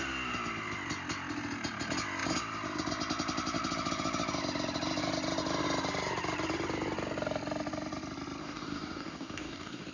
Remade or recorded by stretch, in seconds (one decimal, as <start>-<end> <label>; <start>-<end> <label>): 0.0-8.4 recorded; 8.4-9.9 remade